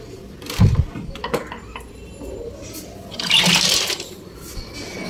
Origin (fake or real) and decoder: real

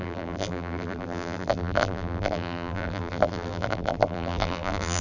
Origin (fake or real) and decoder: fake, vocoder, BigVGAN v2